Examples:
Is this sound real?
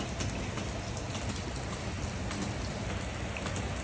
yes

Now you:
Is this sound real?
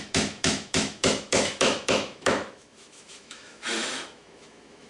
no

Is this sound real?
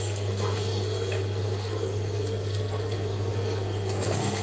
no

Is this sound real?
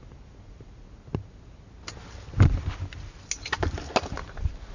yes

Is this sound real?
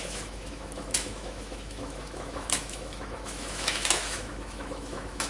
no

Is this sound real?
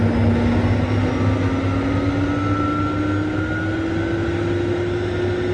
yes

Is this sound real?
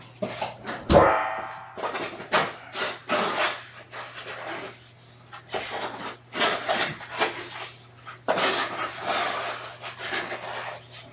yes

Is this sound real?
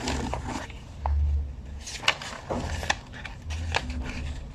yes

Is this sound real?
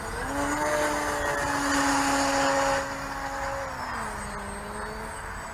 yes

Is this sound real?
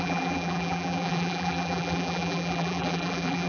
no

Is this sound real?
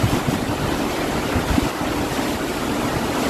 yes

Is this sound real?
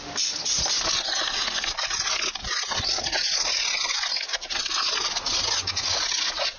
yes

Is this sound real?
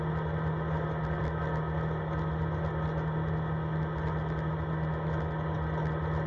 yes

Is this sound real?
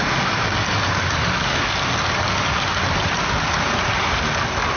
yes